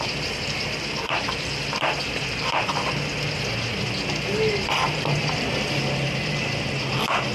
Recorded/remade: remade